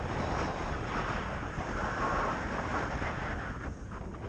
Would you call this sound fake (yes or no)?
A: no